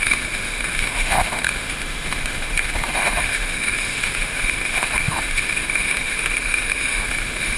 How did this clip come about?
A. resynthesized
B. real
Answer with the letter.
A